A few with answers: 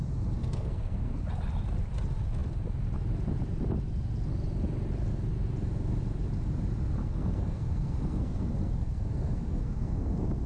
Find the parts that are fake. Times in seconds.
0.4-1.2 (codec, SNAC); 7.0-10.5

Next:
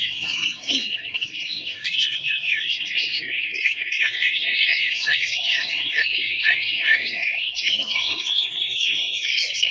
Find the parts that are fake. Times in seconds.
0.0-9.7 (codec, SNAC)

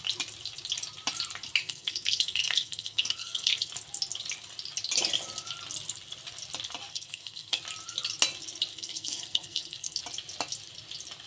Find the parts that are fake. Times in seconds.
1.6-3.7 (codec, SNAC); 6.9-7.6; 8.7-10.0

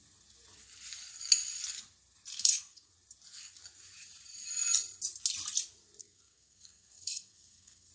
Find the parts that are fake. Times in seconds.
2.3-2.9 (codec, SNAC); 6.0-7.9

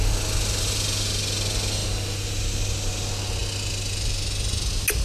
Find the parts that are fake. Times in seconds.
none